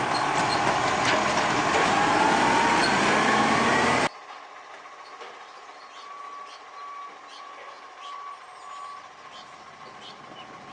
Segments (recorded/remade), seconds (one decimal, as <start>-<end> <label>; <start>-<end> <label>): 0.0-10.7 recorded